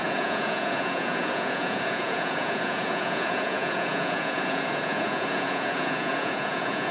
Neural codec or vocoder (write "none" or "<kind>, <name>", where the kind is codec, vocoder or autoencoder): vocoder, Vocos